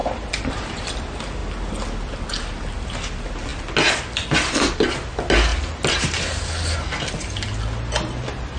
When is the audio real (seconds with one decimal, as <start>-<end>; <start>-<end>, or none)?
0.0-5.5; 6.4-8.6